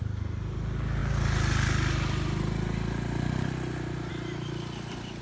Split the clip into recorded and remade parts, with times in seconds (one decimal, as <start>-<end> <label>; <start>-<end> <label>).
0.0-5.2 recorded